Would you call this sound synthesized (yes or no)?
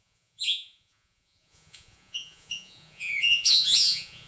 yes